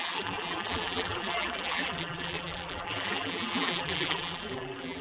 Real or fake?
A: fake